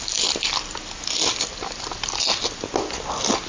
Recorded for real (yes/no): yes